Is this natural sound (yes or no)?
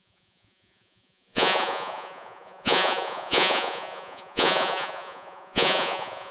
no